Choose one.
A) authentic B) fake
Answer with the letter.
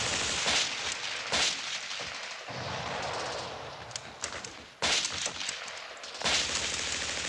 A